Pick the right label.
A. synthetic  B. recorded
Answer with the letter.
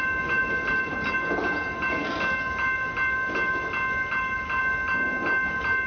B